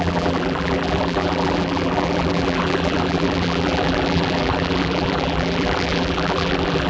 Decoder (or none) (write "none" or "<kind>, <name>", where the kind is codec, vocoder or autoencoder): vocoder, BigVGAN v2